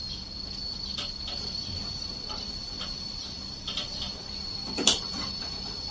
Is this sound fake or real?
fake